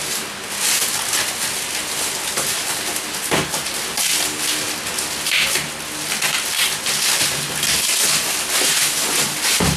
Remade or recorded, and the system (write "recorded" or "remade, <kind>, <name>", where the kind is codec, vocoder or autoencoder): recorded